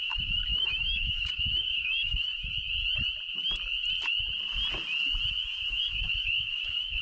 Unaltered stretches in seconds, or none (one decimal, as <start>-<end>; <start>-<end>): 2.3-5.7